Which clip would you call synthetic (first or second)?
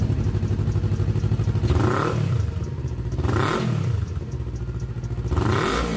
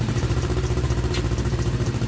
second